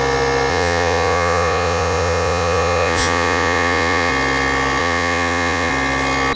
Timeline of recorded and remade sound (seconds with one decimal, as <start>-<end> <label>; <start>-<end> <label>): 0.0-0.5 recorded; 0.5-4.1 remade; 4.1-4.8 recorded; 4.8-5.7 remade; 5.7-6.4 recorded